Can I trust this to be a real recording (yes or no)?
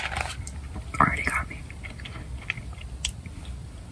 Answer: yes